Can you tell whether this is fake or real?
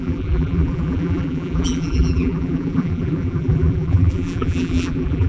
fake